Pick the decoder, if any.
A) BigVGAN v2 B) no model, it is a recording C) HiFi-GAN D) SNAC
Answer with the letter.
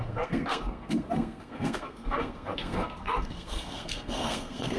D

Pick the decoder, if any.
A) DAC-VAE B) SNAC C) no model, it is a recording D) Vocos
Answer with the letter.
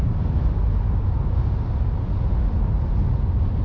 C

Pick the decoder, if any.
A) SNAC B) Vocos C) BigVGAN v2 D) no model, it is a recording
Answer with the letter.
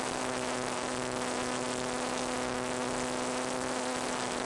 D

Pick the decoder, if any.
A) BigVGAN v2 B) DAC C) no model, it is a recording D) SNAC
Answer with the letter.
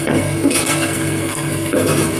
D